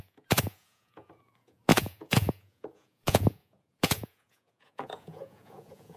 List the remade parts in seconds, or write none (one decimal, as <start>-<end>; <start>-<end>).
0.0-6.0